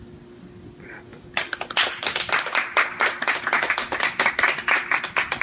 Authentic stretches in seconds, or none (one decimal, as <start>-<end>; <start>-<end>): 0.0-5.4